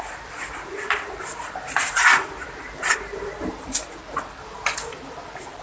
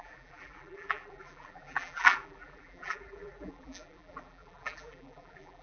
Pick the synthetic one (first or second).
second